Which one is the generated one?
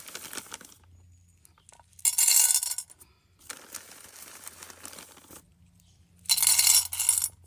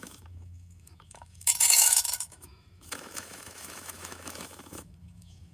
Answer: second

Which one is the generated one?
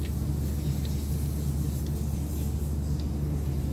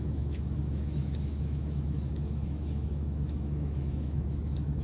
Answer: second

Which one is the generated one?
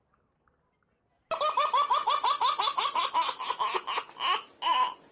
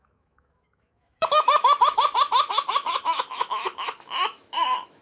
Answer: second